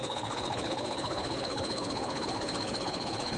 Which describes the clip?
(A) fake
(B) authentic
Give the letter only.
A